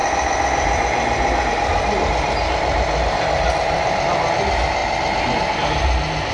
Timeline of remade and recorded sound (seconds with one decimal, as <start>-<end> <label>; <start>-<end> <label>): 0.0-1.5 remade; 1.5-6.3 recorded